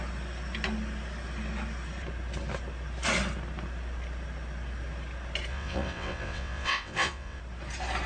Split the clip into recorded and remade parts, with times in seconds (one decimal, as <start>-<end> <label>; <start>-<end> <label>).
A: 0.0-5.5 recorded; 5.5-7.4 remade; 7.4-8.1 recorded

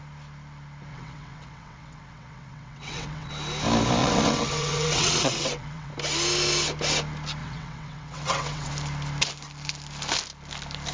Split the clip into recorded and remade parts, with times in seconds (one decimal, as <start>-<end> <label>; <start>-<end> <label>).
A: 0.0-0.9 recorded; 0.9-3.3 remade; 3.3-4.0 recorded; 4.0-5.9 remade; 5.9-7.4 recorded; 7.4-8.7 remade; 8.7-10.9 recorded

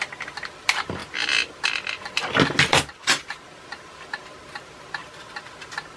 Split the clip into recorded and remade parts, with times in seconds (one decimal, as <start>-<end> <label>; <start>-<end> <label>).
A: 0.0-6.0 recorded

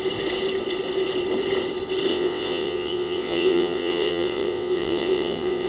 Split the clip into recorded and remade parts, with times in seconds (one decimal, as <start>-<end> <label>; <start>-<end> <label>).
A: 0.0-2.1 recorded; 2.1-5.7 remade

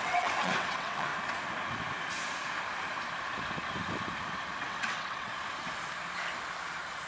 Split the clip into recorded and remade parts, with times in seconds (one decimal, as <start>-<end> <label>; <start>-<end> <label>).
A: 0.0-1.1 remade; 1.1-4.6 recorded; 4.6-5.3 remade; 5.3-7.1 recorded

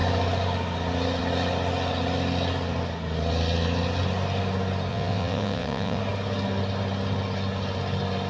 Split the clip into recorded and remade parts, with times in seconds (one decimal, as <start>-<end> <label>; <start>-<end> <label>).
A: 0.0-4.9 recorded; 4.9-6.0 remade; 6.0-8.3 recorded